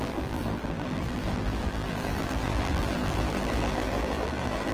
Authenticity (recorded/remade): remade